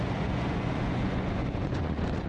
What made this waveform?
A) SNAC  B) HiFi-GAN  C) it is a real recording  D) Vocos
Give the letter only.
D